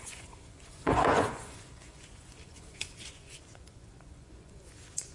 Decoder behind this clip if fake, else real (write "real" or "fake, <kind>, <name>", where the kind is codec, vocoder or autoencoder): fake, vocoder, Vocos